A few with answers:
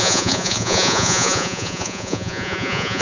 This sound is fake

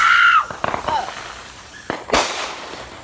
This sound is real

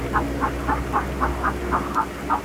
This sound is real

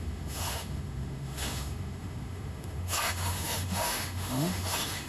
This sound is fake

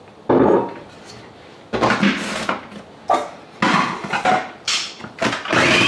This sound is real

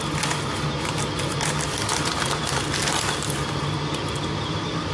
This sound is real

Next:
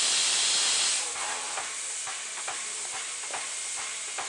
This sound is real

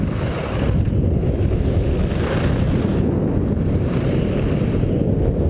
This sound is real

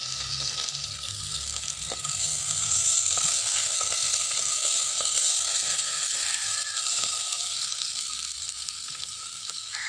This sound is fake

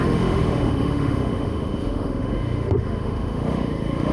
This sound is fake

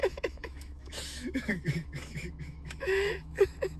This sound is fake